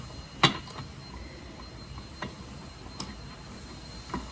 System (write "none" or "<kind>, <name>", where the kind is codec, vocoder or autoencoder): none